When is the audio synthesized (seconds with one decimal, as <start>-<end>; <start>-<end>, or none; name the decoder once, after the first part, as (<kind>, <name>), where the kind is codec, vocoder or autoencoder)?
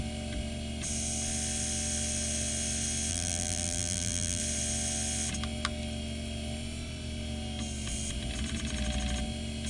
3.1-4.4 (vocoder, BigVGAN v2)